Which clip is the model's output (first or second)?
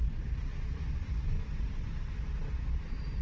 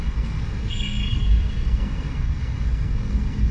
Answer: second